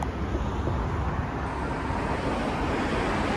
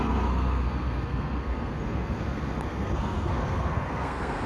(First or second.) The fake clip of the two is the second